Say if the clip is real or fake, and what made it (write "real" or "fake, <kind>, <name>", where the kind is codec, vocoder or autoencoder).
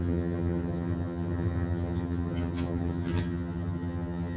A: fake, vocoder, HiFi-GAN